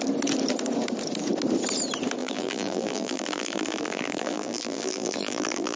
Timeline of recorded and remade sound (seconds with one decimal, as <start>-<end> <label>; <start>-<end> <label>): 0.0-2.2 recorded; 2.2-5.8 remade